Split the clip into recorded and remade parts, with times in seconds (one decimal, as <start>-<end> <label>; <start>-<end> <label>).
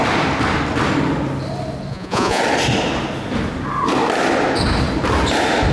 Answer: 0.0-1.9 recorded; 1.9-2.4 remade; 2.4-5.7 recorded